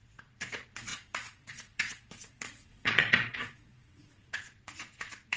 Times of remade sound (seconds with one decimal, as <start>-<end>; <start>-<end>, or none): 0.0-5.4